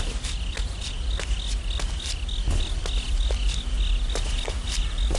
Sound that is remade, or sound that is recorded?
recorded